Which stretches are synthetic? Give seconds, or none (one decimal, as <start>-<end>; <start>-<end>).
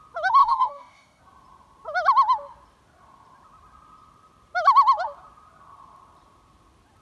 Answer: 0.4-1.2